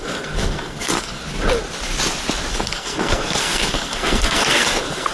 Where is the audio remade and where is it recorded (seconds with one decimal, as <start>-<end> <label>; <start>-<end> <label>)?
0.0-1.2 remade; 1.2-2.5 recorded; 2.5-5.1 remade